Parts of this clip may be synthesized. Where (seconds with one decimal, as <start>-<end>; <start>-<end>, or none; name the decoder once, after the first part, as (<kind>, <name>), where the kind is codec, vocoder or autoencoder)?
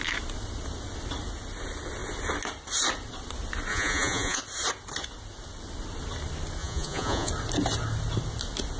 3.7-4.4 (vocoder, Vocos); 6.6-7.3